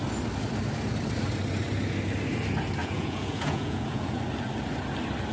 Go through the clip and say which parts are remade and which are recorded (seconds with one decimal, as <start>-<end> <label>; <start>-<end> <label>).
0.0-2.8 recorded; 2.8-4.2 remade; 4.2-5.3 recorded

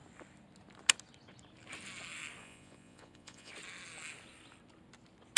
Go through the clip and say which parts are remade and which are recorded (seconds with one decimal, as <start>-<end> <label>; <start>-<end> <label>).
0.0-2.4 recorded; 2.4-3.5 remade; 3.5-5.4 recorded